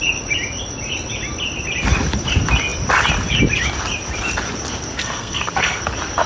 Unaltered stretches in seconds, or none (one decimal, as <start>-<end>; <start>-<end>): 0.0-4.9; 5.8-6.3